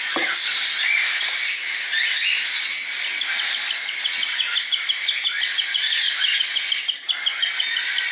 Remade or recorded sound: recorded